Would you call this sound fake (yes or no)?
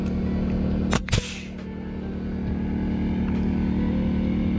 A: no